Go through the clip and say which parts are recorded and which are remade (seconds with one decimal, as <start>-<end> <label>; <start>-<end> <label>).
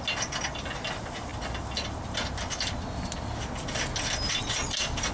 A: 0.0-5.1 recorded